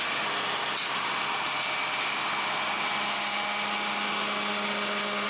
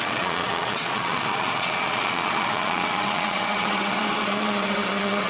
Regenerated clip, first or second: second